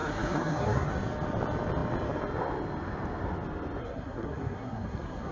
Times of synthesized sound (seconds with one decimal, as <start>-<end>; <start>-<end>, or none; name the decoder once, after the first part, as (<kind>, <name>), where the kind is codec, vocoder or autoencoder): 0.0-0.9 (codec, SNAC); 3.8-5.3